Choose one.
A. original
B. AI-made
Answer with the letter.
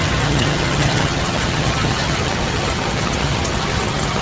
B